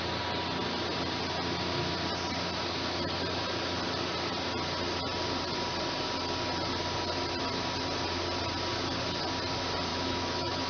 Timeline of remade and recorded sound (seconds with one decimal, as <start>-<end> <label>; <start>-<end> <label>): 0.0-9.9 recorded; 9.9-10.7 remade